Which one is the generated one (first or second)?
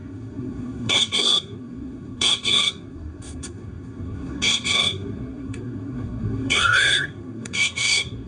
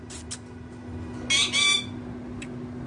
first